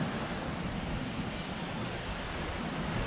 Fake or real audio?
real